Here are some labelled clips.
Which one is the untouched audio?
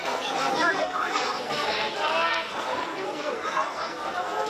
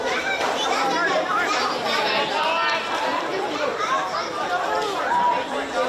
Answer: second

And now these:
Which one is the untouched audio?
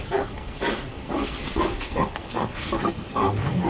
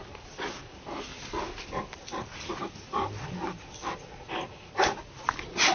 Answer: second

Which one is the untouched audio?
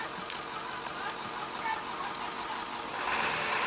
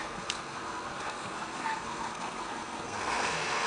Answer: first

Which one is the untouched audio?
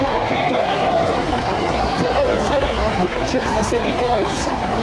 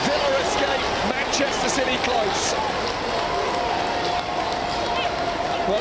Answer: second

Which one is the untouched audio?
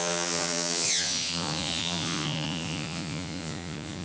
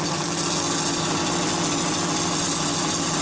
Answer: second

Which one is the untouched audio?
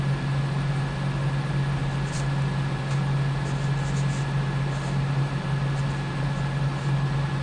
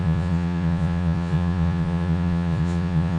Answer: first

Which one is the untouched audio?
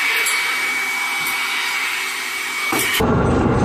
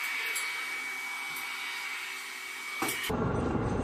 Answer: second